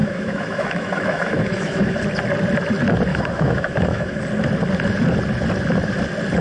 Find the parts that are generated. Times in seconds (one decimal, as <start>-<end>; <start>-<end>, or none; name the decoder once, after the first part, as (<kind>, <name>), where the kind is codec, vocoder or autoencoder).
0.0-2.0 (autoencoder, DAC-VAE); 3.1-4.2